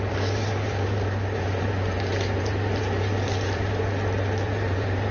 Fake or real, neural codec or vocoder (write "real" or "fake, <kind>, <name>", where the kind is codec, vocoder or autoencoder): fake, vocoder, BigVGAN v2